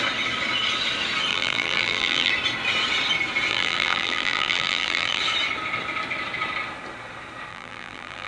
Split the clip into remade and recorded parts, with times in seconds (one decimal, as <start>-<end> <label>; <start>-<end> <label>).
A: 0.0-1.3 recorded; 1.3-2.3 remade; 2.3-3.5 recorded; 3.5-5.2 remade; 5.2-7.5 recorded; 7.5-8.3 remade